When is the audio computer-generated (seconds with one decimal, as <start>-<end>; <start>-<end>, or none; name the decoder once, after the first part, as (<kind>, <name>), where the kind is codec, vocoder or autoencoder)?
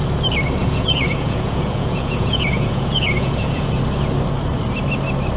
0.6-3.8 (vocoder, Vocos)